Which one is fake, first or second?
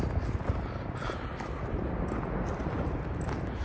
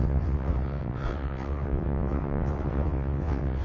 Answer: second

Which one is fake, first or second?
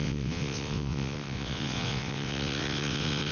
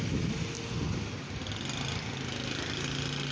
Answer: first